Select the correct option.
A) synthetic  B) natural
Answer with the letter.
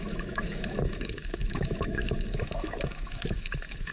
A